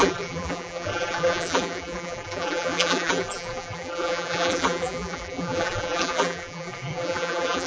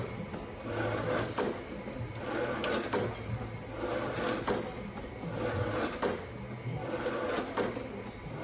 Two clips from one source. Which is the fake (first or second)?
first